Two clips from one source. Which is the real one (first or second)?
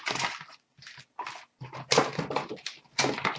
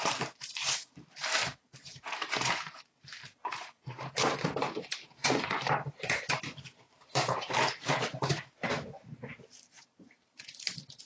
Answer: first